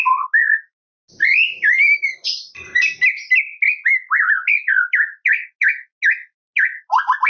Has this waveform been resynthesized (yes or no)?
no